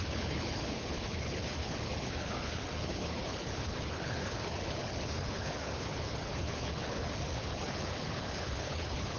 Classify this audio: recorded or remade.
remade